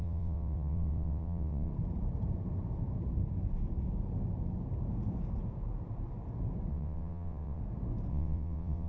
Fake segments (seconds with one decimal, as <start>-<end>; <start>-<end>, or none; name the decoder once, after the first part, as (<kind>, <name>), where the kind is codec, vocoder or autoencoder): 0.0-1.7 (vocoder, WaveNeXt); 6.7-7.6; 8.1-8.9